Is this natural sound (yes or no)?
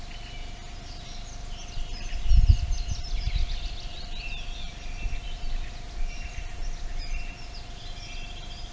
yes